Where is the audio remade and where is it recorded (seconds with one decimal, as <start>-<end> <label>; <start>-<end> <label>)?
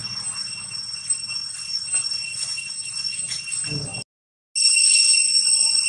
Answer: 0.0-5.9 recorded